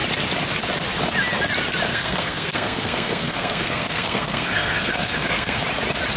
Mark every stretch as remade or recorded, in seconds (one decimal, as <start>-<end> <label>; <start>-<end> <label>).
0.0-1.9 recorded; 1.9-5.6 remade; 5.6-6.2 recorded